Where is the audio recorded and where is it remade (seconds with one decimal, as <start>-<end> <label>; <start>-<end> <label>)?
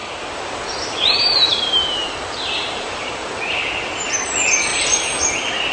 0.0-3.4 remade; 3.4-4.7 recorded; 4.7-5.2 remade; 5.2-5.7 recorded